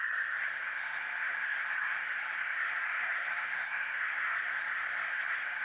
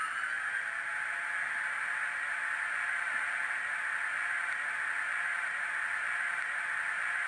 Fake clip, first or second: first